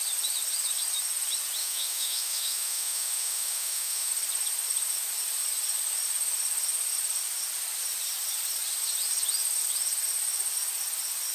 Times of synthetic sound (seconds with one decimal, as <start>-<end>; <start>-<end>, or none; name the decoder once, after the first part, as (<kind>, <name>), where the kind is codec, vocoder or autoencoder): 1.6-4.1 (autoencoder, DAC-VAE)